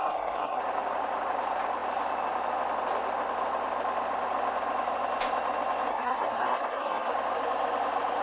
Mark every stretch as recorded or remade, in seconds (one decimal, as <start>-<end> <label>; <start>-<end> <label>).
0.0-0.6 remade; 0.6-5.9 recorded; 5.9-7.1 remade; 7.1-8.2 recorded